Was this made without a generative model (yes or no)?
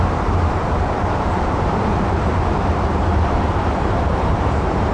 no